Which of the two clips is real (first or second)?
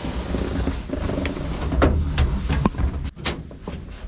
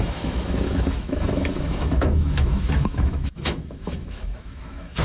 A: first